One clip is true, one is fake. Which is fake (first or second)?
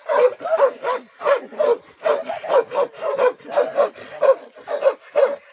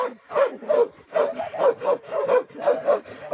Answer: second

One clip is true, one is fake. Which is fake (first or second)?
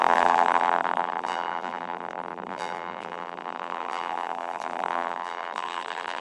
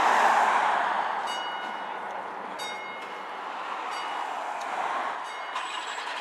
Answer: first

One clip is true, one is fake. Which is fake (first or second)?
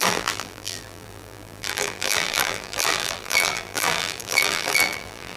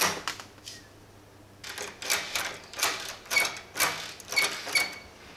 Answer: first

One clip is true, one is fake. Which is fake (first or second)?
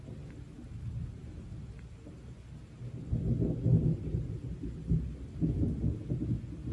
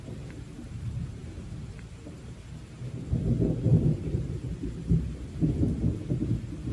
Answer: second